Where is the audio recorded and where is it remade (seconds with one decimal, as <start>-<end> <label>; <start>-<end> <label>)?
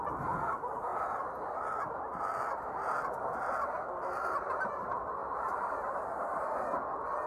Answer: 0.0-7.3 recorded